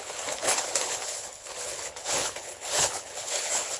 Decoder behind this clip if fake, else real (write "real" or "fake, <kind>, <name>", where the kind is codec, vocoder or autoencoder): fake, codec, HILCodec